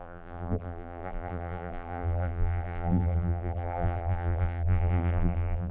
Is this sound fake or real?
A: fake